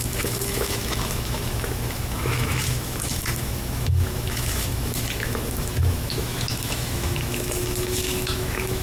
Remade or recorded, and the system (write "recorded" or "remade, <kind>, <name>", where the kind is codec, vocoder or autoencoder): remade, autoencoder, DAC-VAE